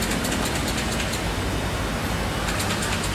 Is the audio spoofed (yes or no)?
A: no